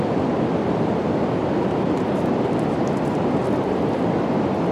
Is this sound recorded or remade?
recorded